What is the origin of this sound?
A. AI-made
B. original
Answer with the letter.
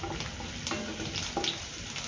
B